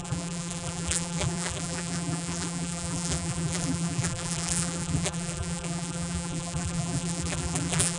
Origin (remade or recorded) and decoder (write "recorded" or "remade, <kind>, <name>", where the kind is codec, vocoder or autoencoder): remade, vocoder, BigVGAN v2